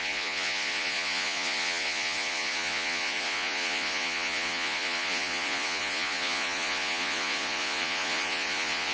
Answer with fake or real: fake